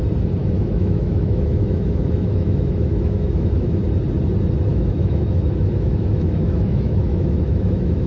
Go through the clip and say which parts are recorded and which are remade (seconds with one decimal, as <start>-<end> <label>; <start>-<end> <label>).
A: 0.0-0.4 recorded; 0.4-3.8 remade; 3.8-4.7 recorded; 4.7-8.1 remade